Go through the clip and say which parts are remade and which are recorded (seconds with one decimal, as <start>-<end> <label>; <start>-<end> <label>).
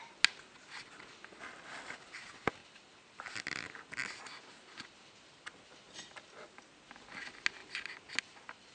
0.0-8.7 recorded